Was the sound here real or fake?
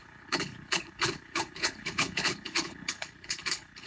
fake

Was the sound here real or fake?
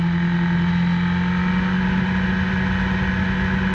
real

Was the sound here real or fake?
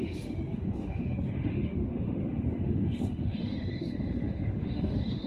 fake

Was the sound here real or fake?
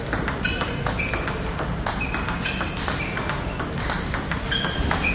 real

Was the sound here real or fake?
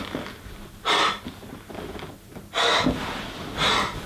real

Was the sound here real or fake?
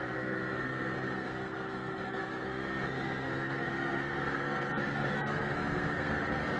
fake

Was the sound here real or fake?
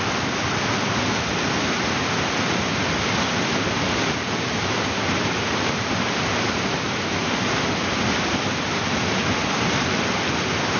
real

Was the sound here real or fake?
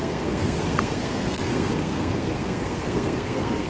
fake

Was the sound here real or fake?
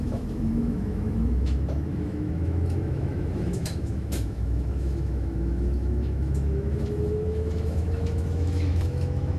fake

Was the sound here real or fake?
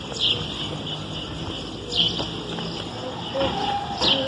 real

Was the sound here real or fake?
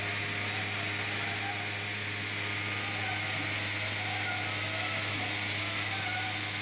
real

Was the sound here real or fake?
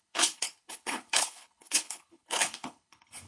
fake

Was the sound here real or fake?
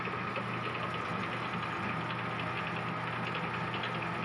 real